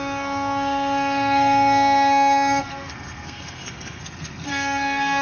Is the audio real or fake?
fake